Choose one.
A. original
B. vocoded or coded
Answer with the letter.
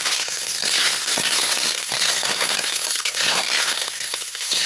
B